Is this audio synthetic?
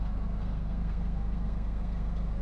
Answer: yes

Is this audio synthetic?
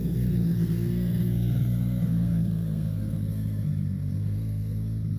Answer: yes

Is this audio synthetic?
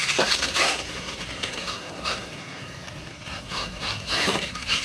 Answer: yes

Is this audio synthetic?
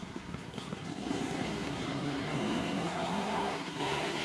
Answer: yes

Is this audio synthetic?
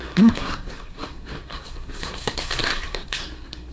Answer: yes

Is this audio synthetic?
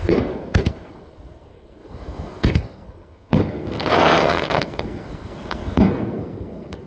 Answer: yes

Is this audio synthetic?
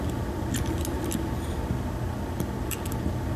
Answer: no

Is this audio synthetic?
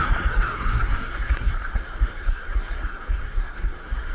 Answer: yes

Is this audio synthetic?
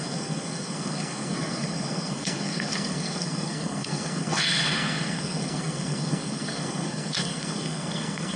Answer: yes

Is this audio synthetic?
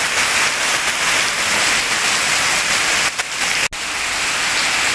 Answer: no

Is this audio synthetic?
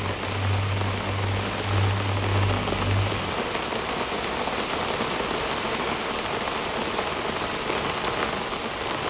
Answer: no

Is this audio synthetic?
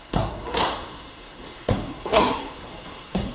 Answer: yes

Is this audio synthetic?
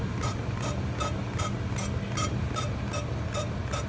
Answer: no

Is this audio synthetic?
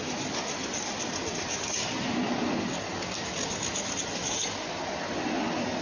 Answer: no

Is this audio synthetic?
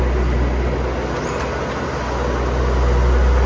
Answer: no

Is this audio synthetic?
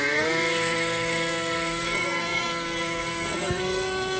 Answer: yes